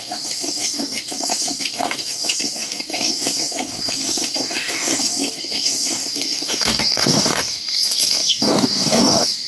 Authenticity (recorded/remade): remade